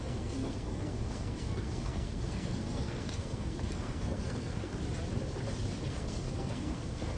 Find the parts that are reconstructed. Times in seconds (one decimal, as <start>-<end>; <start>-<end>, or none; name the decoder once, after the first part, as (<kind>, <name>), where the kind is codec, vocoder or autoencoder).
0.0-4.7 (codec, SNAC); 5.9-7.2